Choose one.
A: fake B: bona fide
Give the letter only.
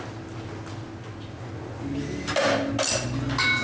B